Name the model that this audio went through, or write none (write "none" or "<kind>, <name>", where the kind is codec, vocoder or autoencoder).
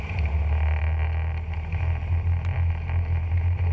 none